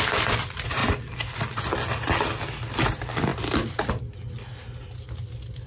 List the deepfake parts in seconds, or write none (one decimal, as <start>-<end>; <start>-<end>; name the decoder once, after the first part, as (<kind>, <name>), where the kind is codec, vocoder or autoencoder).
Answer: none